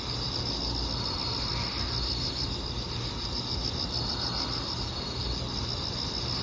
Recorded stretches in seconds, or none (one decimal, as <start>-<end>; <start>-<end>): 0.0-6.4